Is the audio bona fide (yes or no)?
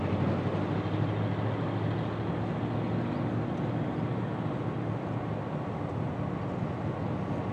yes